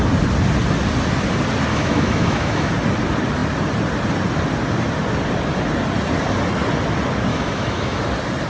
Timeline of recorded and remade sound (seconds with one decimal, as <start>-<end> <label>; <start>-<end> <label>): 0.0-1.7 recorded; 1.7-2.7 remade; 2.7-7.3 recorded; 7.3-8.0 remade; 8.0-8.5 recorded